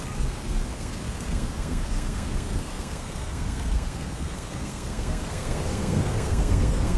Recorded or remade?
remade